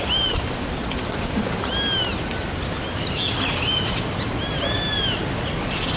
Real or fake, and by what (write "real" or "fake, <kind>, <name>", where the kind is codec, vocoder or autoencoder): real